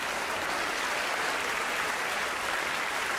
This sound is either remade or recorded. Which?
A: recorded